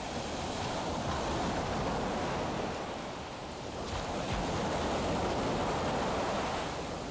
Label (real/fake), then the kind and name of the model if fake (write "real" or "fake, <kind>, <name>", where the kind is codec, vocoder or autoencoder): real